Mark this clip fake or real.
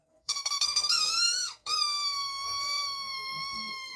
fake